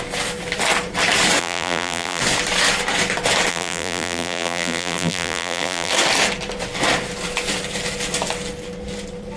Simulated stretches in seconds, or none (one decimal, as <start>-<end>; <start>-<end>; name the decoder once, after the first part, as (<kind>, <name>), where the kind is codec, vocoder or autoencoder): 1.4-2.2 (vocoder, BigVGAN v2); 3.5-5.9